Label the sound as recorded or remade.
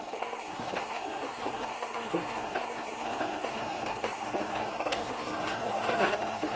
remade